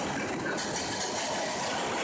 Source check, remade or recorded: recorded